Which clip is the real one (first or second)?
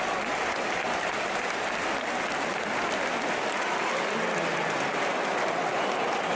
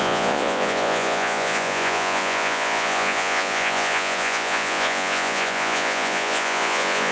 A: first